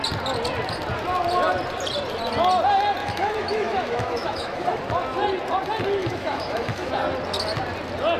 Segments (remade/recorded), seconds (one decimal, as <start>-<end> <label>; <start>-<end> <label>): 0.0-3.0 recorded; 3.0-4.8 remade; 4.8-6.0 recorded; 6.0-6.9 remade; 6.9-8.2 recorded